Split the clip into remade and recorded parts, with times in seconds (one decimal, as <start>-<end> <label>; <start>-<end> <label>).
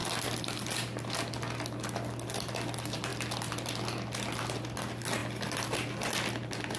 0.0-0.7 remade; 0.7-5.2 recorded; 5.2-5.9 remade; 5.9-6.8 recorded